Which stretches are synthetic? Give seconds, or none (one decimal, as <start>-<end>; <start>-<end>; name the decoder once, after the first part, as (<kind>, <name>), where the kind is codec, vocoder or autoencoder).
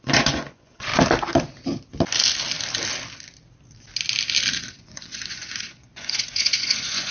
0.0-0.9 (vocoder, Vocos); 4.6-7.1